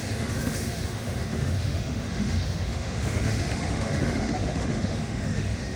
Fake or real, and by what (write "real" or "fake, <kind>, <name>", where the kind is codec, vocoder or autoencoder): fake, autoencoder, DAC-VAE